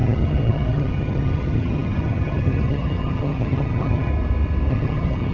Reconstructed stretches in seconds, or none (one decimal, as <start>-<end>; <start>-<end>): 0.0-4.1; 4.7-5.3